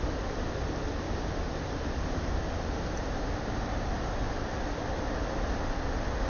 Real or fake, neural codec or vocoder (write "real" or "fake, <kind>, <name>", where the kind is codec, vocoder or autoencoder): real